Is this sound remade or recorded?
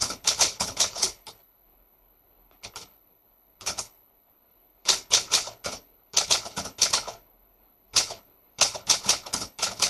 remade